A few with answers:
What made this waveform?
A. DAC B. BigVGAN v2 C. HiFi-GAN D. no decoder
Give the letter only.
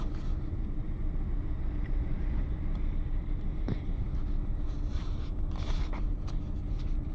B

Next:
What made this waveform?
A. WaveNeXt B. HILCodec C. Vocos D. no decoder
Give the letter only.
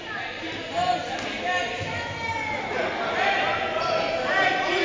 D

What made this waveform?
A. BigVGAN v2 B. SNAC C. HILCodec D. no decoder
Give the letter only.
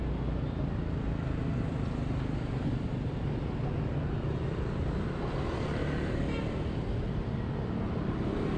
D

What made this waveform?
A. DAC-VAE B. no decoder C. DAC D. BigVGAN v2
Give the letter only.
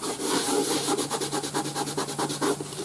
B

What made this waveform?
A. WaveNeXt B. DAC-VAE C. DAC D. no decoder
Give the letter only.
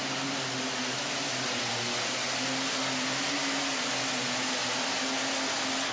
D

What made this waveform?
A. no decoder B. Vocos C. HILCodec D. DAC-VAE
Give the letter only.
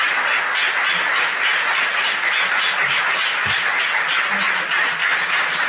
A